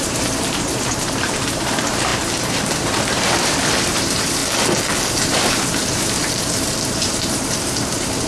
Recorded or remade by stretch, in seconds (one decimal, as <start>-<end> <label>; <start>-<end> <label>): 0.0-4.4 remade; 4.4-5.1 recorded; 5.1-8.3 remade